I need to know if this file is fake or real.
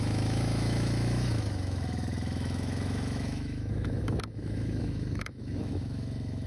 fake